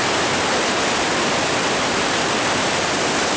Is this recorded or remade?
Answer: recorded